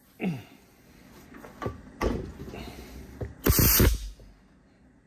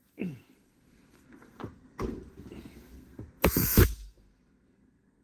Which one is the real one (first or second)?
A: first